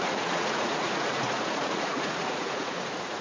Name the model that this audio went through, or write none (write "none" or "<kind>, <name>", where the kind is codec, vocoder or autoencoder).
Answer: vocoder, Vocos